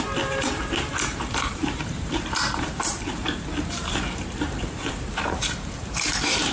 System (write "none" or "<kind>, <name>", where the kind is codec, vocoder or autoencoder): vocoder, BigVGAN v2